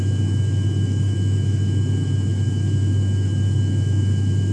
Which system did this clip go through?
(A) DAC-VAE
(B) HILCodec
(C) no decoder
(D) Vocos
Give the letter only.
A